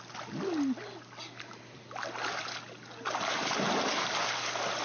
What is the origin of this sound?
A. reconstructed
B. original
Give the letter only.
B